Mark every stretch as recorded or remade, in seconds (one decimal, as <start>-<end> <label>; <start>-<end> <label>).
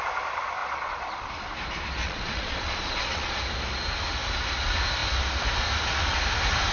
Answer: 0.0-0.6 recorded; 0.6-1.3 remade; 1.3-2.0 recorded; 2.0-3.4 remade; 3.4-6.7 recorded